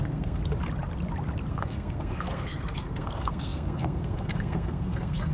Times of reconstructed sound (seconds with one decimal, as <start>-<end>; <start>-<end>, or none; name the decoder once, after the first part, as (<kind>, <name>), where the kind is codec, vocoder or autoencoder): 0.0-0.4 (codec, SNAC); 1.5-5.3